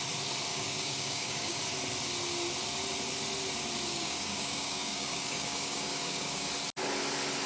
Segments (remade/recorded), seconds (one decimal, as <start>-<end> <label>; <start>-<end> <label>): 0.0-0.5 recorded; 0.5-1.6 remade; 1.6-3.9 recorded; 3.9-6.5 remade; 6.5-7.5 recorded